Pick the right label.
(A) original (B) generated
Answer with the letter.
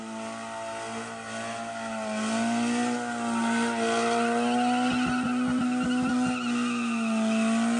A